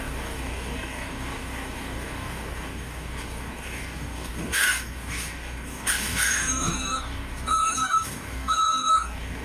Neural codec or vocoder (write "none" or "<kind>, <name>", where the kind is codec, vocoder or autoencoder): codec, DAC